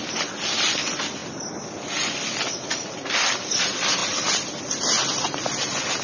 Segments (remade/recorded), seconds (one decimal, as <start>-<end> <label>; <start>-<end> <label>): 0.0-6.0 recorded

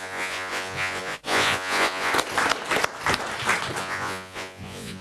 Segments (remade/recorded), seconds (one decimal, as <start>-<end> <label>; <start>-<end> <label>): 0.0-2.1 remade; 2.1-3.8 recorded; 3.8-5.0 remade

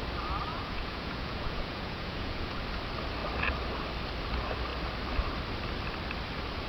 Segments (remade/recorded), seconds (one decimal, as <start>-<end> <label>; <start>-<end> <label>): 0.0-0.5 recorded; 0.5-2.6 remade; 2.6-6.7 recorded

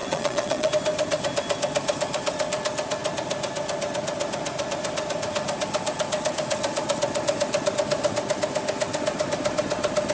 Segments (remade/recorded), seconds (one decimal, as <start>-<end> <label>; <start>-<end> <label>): 0.0-0.7 remade; 0.7-10.1 recorded

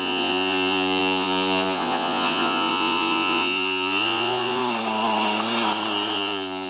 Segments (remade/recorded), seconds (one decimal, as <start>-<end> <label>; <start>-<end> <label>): 0.0-4.6 remade; 4.6-6.1 recorded; 6.1-6.7 remade

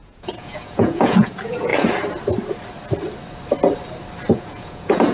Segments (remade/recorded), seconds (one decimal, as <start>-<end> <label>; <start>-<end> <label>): 0.0-1.7 remade; 1.7-4.3 recorded; 4.3-5.1 remade